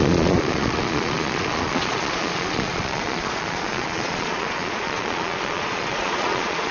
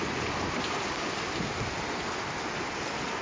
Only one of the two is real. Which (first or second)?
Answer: second